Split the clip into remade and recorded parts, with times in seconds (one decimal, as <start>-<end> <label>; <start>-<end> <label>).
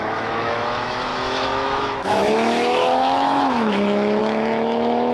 0.0-5.1 remade